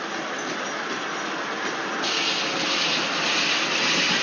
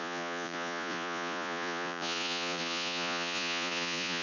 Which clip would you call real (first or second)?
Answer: first